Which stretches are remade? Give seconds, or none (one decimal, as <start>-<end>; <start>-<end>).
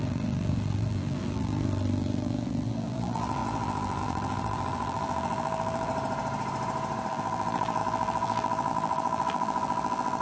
0.0-5.9; 7.1-10.2